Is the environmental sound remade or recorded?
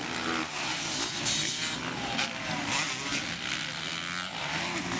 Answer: recorded